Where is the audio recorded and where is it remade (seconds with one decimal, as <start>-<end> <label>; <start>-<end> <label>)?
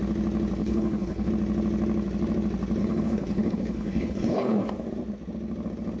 0.0-0.6 recorded; 0.6-1.3 remade; 1.3-2.8 recorded; 2.8-4.7 remade; 4.7-6.0 recorded